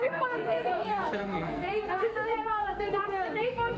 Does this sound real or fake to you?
fake